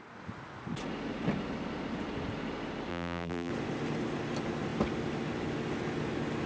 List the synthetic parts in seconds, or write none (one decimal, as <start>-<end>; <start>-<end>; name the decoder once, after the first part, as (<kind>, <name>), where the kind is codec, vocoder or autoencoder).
2.9-3.5 (vocoder, BigVGAN v2)